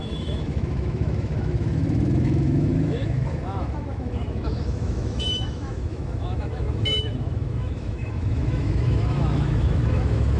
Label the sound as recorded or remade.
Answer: remade